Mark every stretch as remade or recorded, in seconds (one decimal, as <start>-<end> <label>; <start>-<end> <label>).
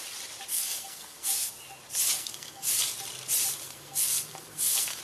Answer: 0.0-0.5 recorded; 0.5-1.5 remade; 1.5-2.1 recorded; 2.1-2.7 remade; 2.7-3.6 recorded; 3.6-5.0 remade